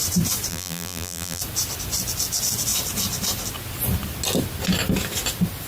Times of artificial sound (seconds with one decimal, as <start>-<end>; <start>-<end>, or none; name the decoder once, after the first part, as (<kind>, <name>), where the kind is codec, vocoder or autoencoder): 0.5-1.4 (vocoder, BigVGAN v2)